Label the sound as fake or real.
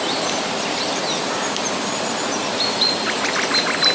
fake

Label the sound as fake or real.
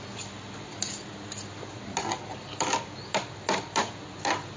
real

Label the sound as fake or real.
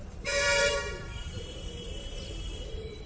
fake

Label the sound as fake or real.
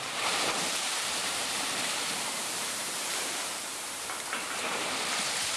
fake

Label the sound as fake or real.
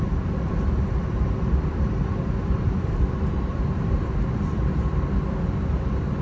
fake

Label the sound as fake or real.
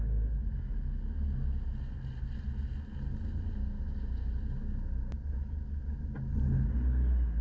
real